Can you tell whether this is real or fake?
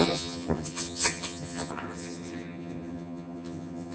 fake